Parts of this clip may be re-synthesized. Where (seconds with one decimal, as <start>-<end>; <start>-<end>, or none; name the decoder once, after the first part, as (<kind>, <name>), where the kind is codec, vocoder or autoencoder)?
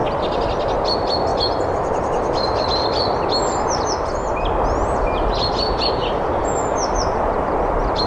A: none